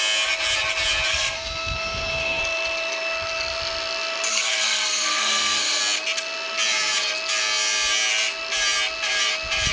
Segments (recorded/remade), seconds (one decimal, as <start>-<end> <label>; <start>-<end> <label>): 0.0-1.1 recorded; 1.1-2.4 remade; 2.4-4.3 recorded; 4.3-5.8 remade; 5.8-9.7 recorded